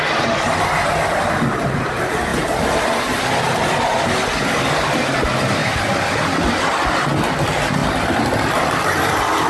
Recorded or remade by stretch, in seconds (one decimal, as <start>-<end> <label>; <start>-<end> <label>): 0.0-9.5 recorded